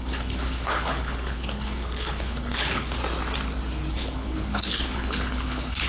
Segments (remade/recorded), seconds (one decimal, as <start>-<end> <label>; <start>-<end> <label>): 0.0-3.0 remade; 3.0-3.9 recorded; 3.9-5.9 remade